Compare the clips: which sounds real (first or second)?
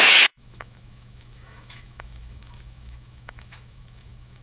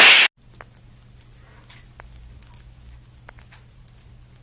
second